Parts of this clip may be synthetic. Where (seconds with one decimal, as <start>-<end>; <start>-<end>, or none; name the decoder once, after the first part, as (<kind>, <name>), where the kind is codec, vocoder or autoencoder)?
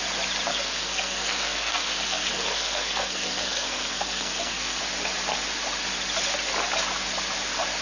0.5-4.8 (codec, SNAC)